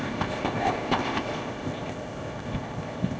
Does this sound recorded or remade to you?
remade